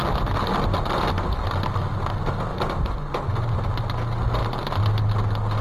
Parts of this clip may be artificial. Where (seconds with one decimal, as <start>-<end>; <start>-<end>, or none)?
2.5-3.8